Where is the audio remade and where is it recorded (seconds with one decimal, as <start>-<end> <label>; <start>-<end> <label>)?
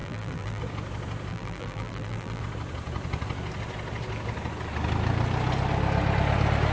0.0-0.6 remade; 0.6-1.3 recorded; 1.3-2.4 remade; 2.4-6.7 recorded